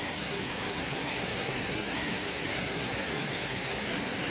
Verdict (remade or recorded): remade